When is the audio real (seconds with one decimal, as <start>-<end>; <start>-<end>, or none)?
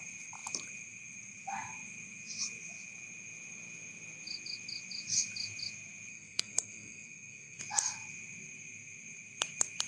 0.0-6.1; 7.6-9.9